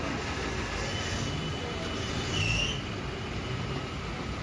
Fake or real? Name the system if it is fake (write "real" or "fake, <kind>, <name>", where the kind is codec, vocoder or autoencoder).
real